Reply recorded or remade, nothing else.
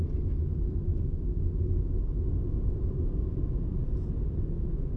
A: recorded